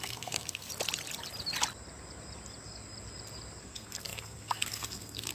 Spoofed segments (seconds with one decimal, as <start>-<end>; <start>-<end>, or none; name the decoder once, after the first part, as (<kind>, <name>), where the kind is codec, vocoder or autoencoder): 0.0-0.7 (codec, SNAC); 3.6-5.3